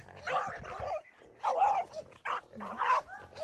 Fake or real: real